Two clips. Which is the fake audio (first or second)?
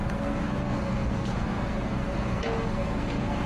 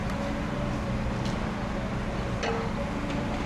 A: first